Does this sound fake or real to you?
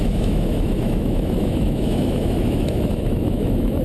fake